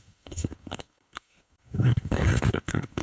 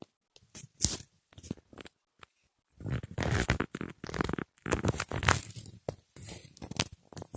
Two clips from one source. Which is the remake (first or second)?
first